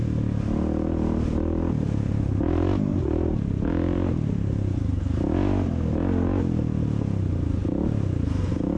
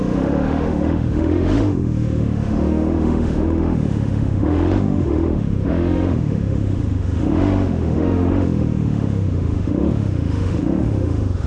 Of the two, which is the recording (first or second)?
first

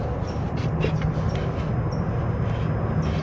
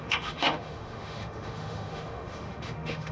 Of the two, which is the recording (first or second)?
first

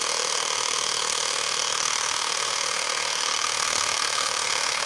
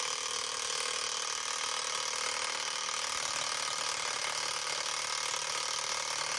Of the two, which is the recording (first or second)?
second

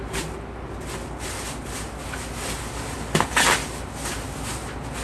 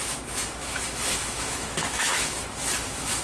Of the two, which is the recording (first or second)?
first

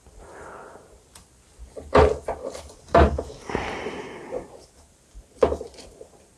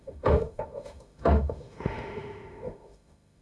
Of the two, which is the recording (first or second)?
first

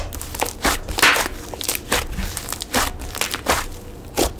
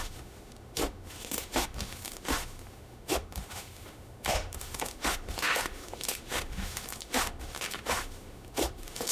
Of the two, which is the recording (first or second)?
first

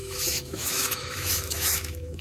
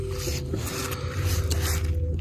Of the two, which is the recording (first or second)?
second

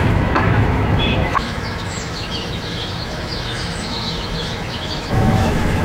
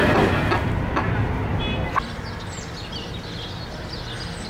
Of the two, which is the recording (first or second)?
second